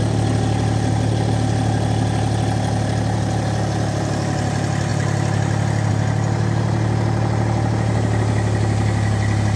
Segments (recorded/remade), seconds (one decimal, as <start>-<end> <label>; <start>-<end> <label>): 0.0-9.6 recorded